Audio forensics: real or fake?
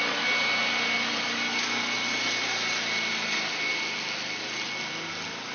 real